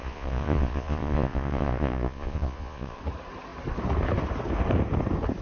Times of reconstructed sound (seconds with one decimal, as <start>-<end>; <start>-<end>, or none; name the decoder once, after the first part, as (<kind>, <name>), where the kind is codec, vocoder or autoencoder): 0.0-3.0 (vocoder, Vocos)